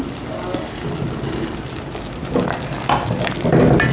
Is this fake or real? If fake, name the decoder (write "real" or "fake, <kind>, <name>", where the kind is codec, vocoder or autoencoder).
real